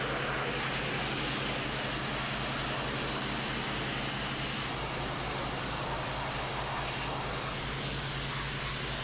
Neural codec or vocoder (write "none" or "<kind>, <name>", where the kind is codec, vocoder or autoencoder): none